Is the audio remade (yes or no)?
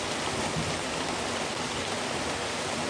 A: no